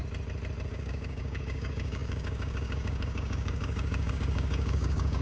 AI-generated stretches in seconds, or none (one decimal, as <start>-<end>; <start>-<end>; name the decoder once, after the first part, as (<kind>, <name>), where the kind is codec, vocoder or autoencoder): 0.7-5.2 (codec, DAC)